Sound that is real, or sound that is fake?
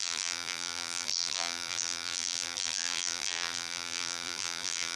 fake